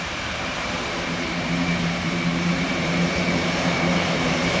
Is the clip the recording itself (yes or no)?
no